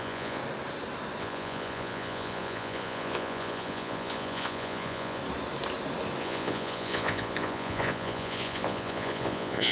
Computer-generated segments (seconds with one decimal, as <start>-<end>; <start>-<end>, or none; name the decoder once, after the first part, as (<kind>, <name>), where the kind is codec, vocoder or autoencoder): 0.0-0.4 (vocoder, Vocos); 1.2-5.2; 6.2-9.7

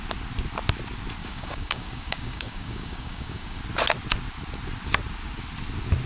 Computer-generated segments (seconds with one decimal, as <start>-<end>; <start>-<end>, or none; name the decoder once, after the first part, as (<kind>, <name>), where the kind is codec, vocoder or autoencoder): 1.2-3.6 (codec, DAC)

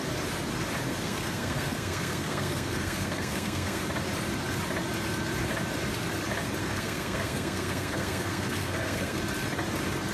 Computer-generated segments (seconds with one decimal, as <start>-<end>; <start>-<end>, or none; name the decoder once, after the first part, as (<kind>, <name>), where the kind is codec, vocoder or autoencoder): 0.9-3.8 (codec, SNAC); 6.6-9.2

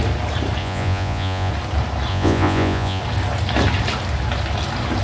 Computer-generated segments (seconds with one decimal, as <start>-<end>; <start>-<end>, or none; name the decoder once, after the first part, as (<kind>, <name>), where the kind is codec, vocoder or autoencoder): 0.6-1.5 (vocoder, Vocos); 2.1-3.0